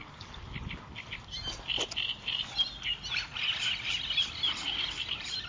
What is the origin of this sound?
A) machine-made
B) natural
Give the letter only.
B